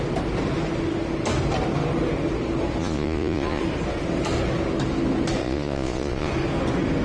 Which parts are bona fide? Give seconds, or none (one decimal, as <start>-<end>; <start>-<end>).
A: 0.0-2.8; 3.6-5.4; 6.3-7.0